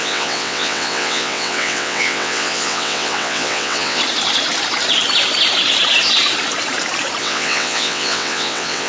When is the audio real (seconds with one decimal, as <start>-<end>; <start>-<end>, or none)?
4.0-7.2